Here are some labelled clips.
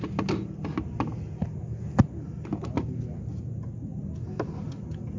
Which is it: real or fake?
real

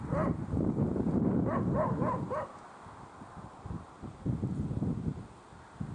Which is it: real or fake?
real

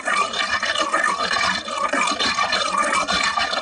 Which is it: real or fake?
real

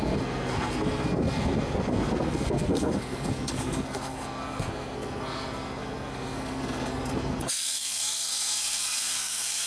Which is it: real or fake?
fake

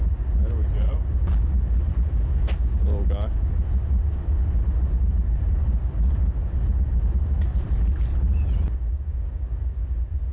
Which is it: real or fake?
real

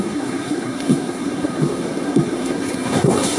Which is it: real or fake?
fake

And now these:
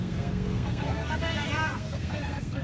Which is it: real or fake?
fake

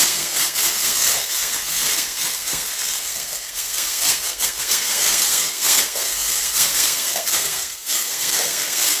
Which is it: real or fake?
fake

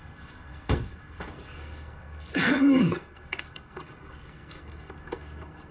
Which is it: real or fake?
fake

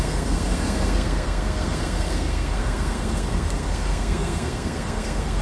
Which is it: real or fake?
fake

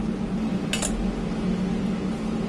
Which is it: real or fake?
real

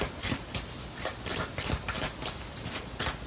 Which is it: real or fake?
real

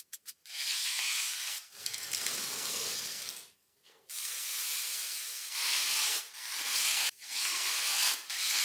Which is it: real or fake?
fake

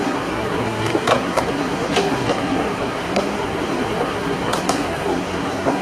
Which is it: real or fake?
fake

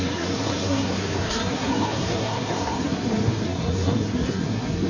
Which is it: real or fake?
fake